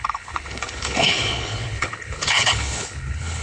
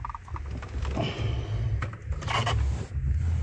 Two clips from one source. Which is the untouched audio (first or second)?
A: second